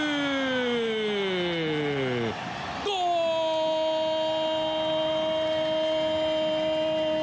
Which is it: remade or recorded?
recorded